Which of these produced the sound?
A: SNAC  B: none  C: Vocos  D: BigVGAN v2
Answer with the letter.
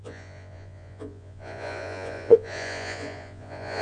C